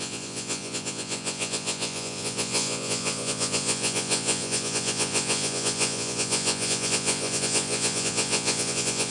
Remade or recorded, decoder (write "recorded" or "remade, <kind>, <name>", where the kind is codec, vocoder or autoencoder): remade, vocoder, Vocos